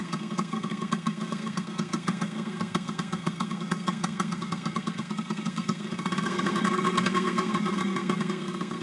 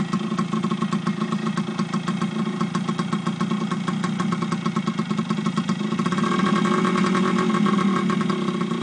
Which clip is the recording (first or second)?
second